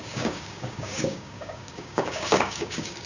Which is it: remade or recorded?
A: remade